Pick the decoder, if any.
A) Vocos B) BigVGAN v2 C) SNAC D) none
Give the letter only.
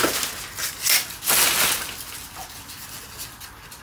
D